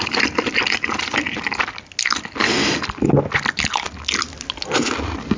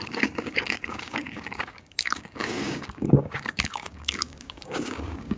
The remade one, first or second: second